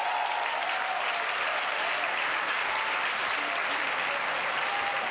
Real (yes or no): yes